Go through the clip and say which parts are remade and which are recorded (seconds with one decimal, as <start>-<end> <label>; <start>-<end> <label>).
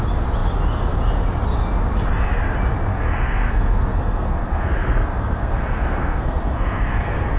0.0-2.9 recorded; 2.9-7.4 remade